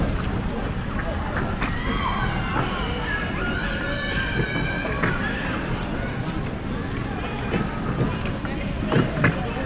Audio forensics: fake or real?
real